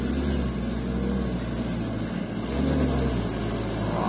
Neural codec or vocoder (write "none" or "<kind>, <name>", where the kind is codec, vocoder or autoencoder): none